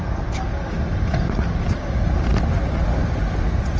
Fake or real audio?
real